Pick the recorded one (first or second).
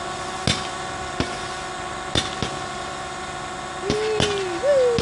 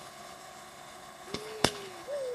first